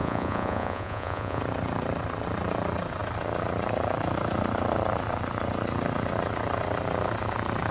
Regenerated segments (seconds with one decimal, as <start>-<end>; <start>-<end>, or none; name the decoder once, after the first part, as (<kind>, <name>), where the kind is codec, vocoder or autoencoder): 0.0-1.4 (vocoder, Vocos)